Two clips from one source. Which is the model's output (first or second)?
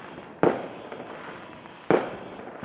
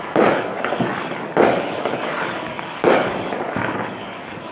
second